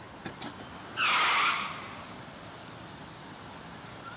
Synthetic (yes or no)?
no